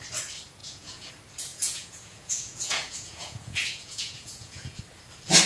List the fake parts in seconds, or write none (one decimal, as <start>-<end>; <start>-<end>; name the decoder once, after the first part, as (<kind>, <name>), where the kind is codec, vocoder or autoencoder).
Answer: 0.6-1.1 (vocoder, Vocos); 1.5-4.8